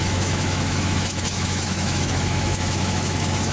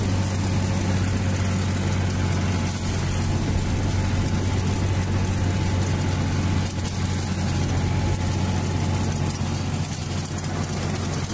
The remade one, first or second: first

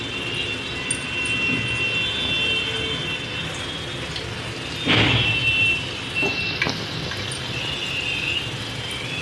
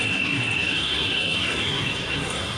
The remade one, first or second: second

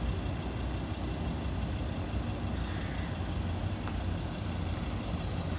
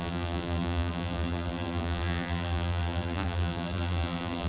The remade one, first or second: second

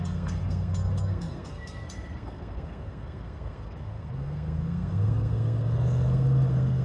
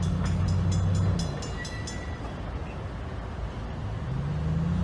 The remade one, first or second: first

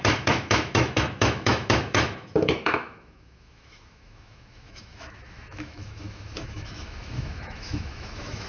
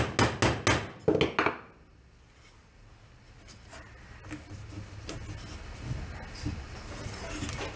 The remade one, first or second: first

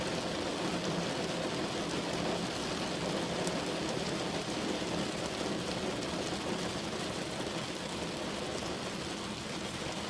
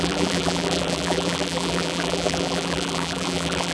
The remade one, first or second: second